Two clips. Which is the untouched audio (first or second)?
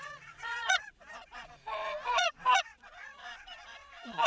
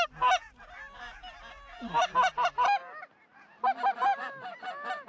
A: second